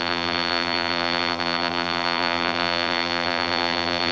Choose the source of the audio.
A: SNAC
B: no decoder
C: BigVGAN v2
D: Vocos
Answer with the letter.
C